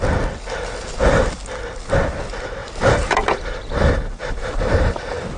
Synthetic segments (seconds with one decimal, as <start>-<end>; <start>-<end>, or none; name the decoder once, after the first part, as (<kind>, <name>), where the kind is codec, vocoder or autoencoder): 2.6-5.0 (vocoder, BigVGAN v2)